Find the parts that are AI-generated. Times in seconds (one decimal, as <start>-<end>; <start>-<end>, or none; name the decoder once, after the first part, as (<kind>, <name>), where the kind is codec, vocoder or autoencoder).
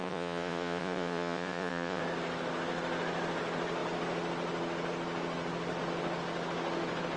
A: 0.0-2.0 (vocoder, Vocos)